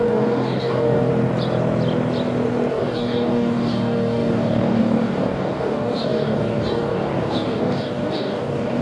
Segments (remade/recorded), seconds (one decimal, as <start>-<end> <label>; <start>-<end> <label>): 0.0-1.1 remade; 1.1-2.7 recorded; 2.7-8.8 remade